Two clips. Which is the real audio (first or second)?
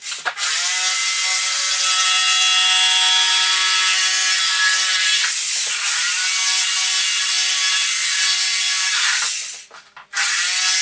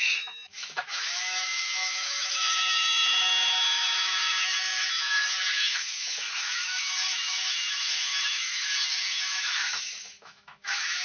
first